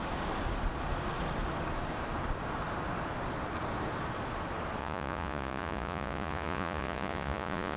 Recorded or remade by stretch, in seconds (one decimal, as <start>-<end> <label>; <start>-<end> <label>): 0.0-4.8 recorded; 4.8-7.8 remade